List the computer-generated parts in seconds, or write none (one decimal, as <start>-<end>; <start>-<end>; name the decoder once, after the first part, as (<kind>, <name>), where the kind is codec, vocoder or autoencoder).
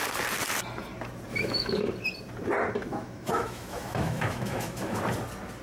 1.3-1.8 (autoencoder, DAC-VAE); 2.9-5.0